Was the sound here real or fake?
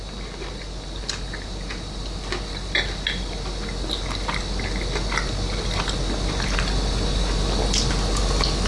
real